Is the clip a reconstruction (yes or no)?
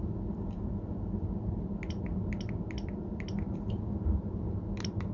no